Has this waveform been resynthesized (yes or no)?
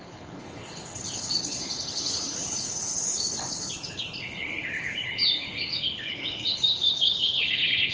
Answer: yes